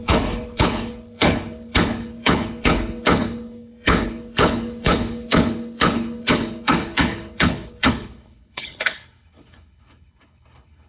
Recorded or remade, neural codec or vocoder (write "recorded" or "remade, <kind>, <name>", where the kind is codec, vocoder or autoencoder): remade, codec, HILCodec